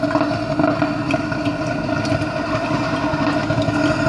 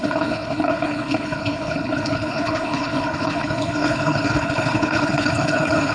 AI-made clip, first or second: second